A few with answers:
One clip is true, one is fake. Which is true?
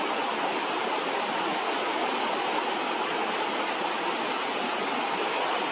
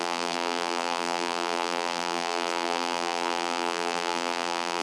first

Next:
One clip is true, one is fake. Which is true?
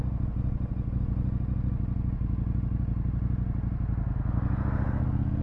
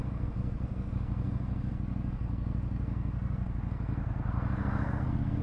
first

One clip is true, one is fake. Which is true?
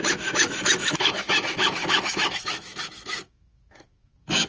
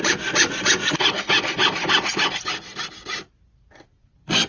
second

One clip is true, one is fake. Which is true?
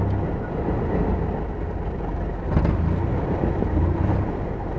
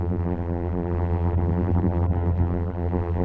first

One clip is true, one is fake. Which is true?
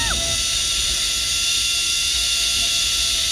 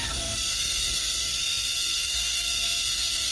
first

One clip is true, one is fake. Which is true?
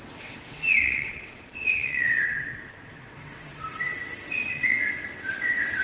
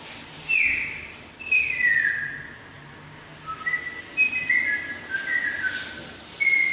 second